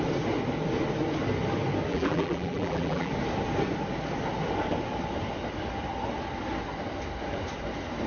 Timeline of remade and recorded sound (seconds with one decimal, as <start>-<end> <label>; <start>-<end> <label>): 0.0-1.9 recorded; 1.9-3.1 remade; 3.1-8.1 recorded